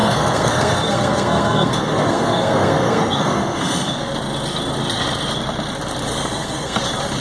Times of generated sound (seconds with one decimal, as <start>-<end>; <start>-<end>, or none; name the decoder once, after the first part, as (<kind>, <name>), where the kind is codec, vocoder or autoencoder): 0.0-4.1 (codec, SNAC); 6.1-6.8